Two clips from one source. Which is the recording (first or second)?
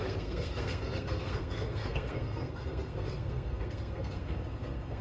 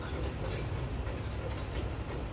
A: second